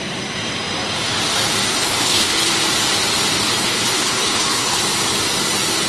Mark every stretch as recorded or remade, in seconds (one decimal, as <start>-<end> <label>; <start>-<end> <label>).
0.0-1.7 recorded; 1.7-2.5 remade; 2.5-3.6 recorded; 3.6-4.8 remade; 4.8-5.9 recorded